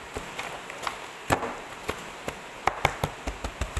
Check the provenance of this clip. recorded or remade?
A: recorded